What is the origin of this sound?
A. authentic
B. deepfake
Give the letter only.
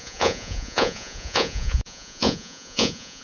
B